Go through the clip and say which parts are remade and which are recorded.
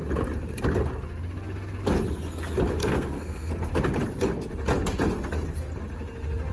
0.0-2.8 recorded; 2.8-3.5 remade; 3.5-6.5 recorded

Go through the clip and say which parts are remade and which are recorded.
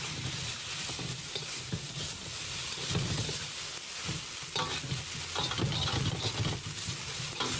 0.0-7.6 recorded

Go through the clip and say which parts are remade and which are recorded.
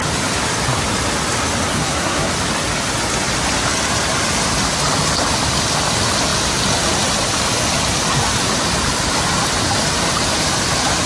0.0-1.7 recorded; 1.7-2.3 remade; 2.3-11.1 recorded